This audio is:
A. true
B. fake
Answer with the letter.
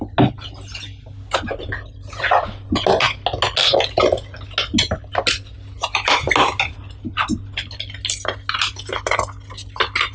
A